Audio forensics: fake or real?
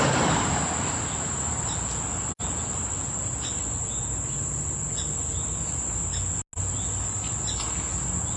real